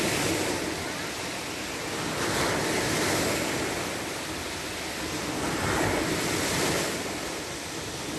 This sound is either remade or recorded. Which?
recorded